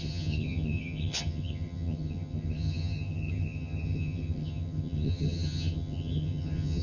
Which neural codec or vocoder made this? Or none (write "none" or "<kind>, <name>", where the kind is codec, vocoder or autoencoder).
vocoder, HiFi-GAN